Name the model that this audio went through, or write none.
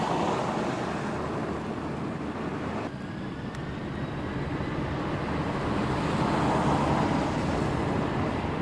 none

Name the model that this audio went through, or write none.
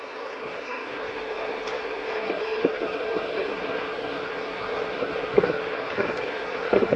codec, SNAC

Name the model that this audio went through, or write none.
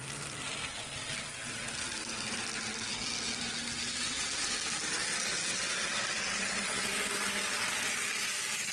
none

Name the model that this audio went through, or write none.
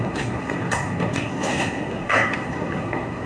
codec, SNAC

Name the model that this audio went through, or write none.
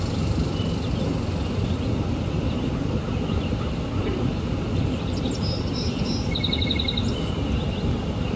none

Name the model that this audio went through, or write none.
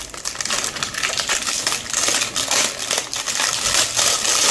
none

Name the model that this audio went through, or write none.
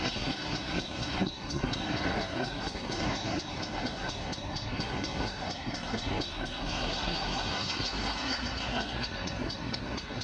codec, SNAC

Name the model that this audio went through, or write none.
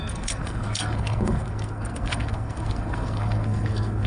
codec, SNAC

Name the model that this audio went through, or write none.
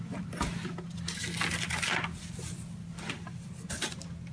none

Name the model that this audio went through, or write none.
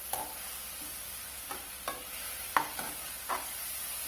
none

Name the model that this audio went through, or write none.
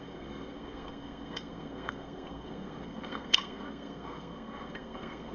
codec, SNAC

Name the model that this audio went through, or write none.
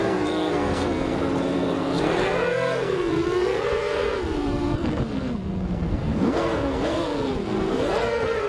codec, SNAC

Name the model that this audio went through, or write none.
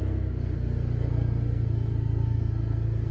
codec, SNAC